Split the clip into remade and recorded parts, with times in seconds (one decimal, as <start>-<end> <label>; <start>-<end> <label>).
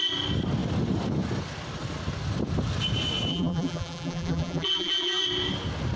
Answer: 0.0-3.3 recorded; 3.3-5.2 remade; 5.2-6.0 recorded